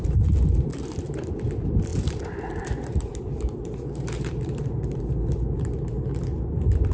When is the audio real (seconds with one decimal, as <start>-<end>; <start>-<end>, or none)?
0.0-0.7; 1.3-1.9; 5.0-6.9